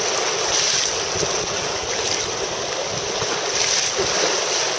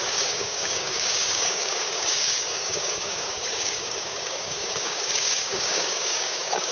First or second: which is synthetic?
second